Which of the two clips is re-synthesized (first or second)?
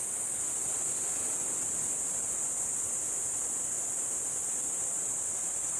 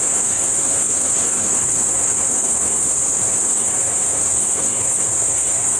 second